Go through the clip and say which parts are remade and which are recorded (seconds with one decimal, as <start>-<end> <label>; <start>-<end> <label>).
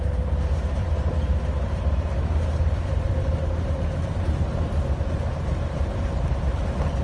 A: 0.0-0.8 recorded; 0.8-5.0 remade; 5.0-7.0 recorded